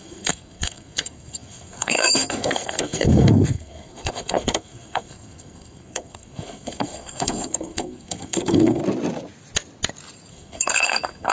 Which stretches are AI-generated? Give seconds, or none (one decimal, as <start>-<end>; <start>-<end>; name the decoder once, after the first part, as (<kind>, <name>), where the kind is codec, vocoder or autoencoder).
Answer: 0.0-8.8 (codec, SNAC); 10.3-11.3